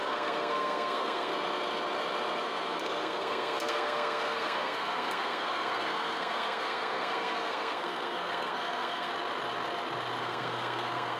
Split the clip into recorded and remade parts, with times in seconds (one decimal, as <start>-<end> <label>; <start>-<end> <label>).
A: 0.0-1.3 remade; 1.3-2.4 recorded; 2.4-9.1 remade; 9.1-10.2 recorded; 10.2-11.2 remade